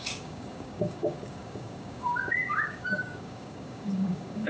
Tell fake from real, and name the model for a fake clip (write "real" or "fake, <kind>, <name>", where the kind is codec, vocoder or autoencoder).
fake, codec, DAC